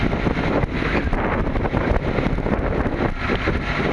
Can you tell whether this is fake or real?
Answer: real